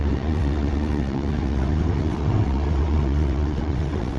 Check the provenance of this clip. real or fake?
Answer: fake